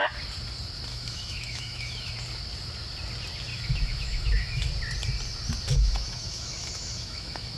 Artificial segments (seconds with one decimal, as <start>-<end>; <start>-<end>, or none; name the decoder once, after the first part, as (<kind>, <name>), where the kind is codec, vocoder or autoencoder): 0.9-2.1 (autoencoder, DAC-VAE); 3.5-4.7; 5.7-7.6